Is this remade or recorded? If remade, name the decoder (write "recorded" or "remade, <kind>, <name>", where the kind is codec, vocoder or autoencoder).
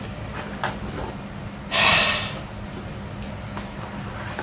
recorded